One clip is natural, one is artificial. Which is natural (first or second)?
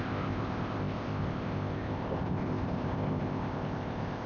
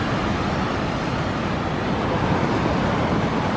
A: second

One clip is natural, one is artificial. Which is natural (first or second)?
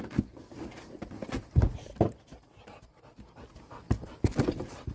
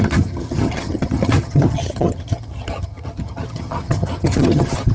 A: first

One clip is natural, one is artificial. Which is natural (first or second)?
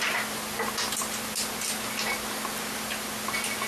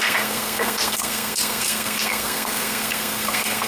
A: first